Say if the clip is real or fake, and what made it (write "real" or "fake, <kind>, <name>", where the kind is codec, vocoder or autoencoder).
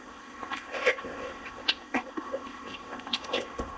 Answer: fake, codec, ZipCodec